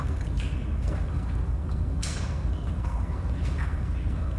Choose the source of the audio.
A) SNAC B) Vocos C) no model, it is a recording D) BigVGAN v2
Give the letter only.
A